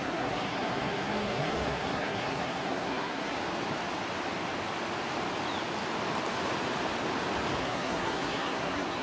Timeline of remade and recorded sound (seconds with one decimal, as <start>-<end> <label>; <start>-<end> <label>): 0.0-3.4 remade; 3.4-7.6 recorded; 7.6-9.0 remade